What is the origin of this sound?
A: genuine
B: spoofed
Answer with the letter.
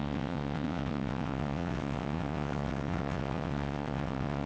B